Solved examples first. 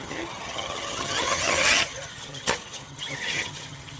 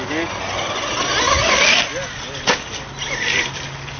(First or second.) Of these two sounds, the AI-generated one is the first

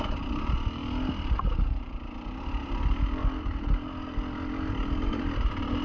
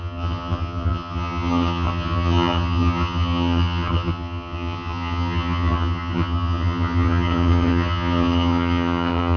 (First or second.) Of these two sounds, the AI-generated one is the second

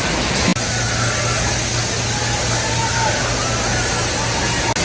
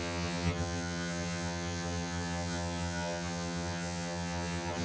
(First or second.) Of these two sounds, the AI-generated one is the second